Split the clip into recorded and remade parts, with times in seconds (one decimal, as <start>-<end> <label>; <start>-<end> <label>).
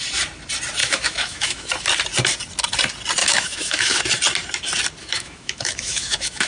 0.0-0.8 recorded; 0.8-1.7 remade; 1.7-3.2 recorded; 3.2-4.0 remade; 4.0-5.0 recorded; 5.0-6.5 remade